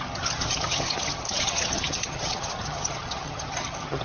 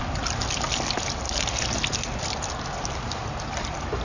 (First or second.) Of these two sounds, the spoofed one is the first